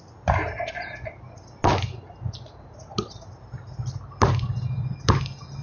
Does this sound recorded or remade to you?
recorded